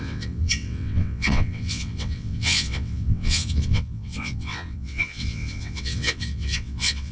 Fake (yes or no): yes